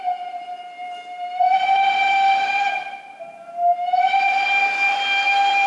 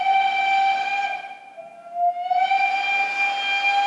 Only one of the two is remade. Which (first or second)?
first